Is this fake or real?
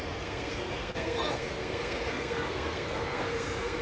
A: fake